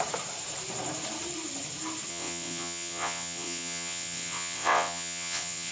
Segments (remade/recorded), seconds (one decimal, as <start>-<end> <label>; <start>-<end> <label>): 0.0-2.1 recorded; 2.1-5.7 remade